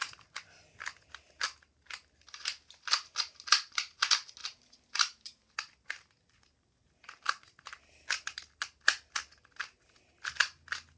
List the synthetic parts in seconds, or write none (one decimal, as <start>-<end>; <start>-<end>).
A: none